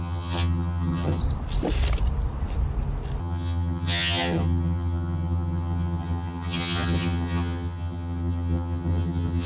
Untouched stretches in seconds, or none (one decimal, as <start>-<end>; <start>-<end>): 1.2-3.2